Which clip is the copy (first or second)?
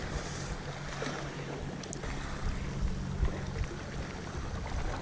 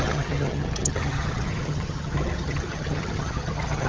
second